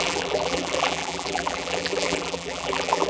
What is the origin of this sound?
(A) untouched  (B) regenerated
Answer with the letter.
B